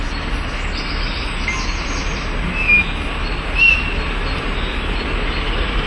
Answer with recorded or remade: recorded